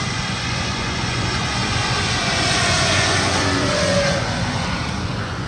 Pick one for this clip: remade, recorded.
remade